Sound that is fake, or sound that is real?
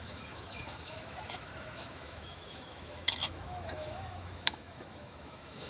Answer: fake